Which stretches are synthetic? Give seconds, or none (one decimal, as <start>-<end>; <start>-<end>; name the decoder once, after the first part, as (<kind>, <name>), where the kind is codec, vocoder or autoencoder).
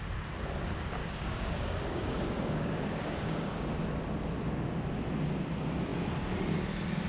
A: 1.0-3.7 (codec, DAC)